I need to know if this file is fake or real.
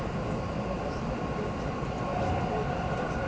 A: real